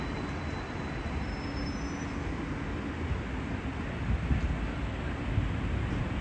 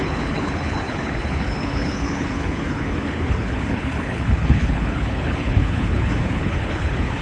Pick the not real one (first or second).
second